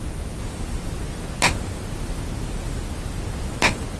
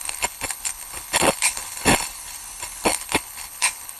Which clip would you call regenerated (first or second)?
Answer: second